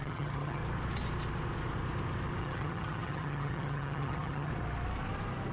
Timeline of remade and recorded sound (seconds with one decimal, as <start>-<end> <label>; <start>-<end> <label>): 0.0-0.6 remade; 0.6-2.4 recorded; 2.4-4.5 remade; 4.5-5.5 recorded